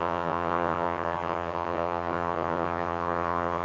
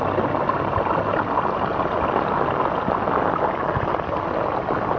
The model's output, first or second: first